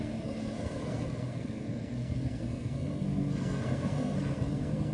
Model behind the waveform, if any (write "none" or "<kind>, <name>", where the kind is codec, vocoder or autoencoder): codec, SNAC